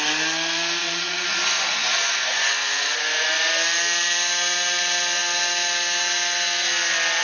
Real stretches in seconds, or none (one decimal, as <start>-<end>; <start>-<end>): 0.0-0.8; 3.5-7.2